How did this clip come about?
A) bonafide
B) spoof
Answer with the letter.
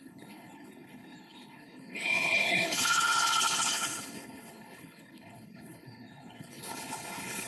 B